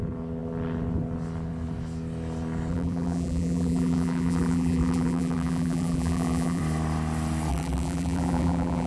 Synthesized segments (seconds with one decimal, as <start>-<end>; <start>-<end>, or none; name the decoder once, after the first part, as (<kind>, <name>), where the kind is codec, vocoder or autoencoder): 2.7-6.6 (vocoder, BigVGAN v2); 7.5-8.9